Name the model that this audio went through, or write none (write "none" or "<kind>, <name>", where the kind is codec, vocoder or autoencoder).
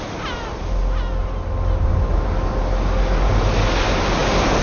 none